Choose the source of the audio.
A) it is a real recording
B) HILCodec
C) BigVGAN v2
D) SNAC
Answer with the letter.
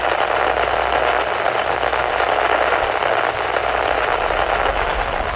A